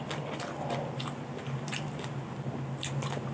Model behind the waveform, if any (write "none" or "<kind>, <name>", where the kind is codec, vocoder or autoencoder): none